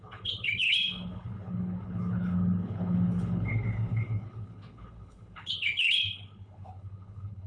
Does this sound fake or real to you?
fake